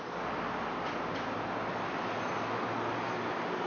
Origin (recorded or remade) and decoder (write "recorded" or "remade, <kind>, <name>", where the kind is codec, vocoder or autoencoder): recorded